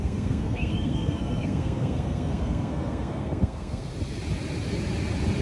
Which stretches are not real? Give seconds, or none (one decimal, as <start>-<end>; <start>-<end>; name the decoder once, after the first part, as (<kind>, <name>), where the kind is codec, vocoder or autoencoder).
0.0-3.9 (codec, SNAC)